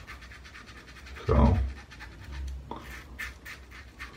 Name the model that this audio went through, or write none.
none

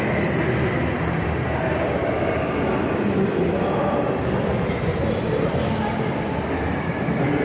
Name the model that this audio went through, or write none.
none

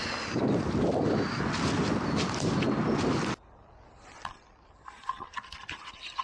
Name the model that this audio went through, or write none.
none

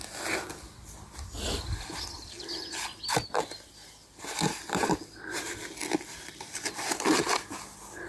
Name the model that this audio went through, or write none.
none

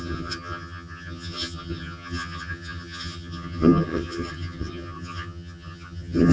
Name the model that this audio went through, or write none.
vocoder, HiFi-GAN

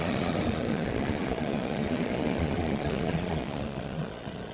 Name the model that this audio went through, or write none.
vocoder, Vocos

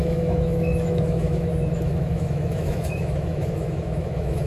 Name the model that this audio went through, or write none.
autoencoder, DAC-VAE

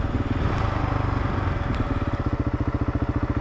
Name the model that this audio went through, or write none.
none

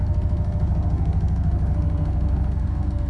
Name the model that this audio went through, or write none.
codec, SNAC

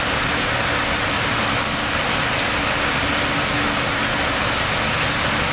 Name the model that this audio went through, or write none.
none